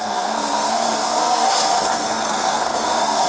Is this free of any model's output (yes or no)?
no